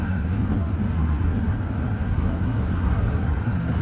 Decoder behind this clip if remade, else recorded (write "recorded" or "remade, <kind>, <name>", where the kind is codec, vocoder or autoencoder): remade, codec, SNAC